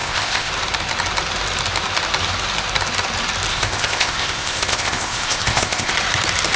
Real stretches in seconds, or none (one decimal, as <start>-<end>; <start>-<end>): 0.5-3.5; 5.9-6.6

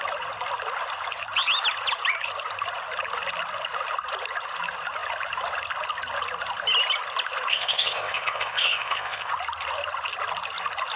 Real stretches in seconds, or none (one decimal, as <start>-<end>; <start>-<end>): 0.0-7.5; 9.3-11.0